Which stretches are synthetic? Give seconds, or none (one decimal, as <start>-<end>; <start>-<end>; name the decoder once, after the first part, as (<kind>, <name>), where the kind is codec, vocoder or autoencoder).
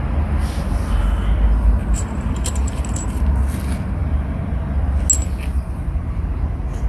1.8-2.8 (vocoder, BigVGAN v2)